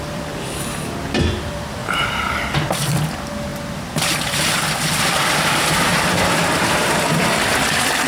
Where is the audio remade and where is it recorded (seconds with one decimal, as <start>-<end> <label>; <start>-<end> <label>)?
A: 0.0-1.8 remade; 1.8-2.7 recorded; 2.7-8.1 remade